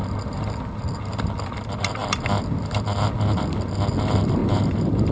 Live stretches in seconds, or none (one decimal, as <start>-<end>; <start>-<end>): 0.0-5.1